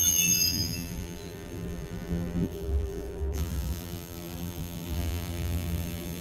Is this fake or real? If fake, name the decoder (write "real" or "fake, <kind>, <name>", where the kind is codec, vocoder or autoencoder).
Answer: fake, vocoder, BigVGAN v2